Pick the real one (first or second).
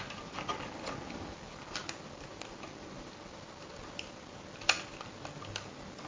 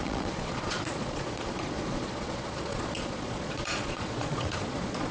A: first